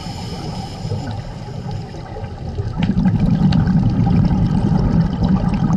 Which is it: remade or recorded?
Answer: recorded